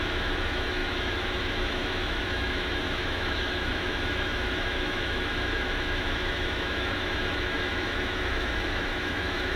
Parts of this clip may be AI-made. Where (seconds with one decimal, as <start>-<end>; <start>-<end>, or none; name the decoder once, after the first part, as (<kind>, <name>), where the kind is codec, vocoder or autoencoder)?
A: 0.0-9.6 (autoencoder, DAC-VAE)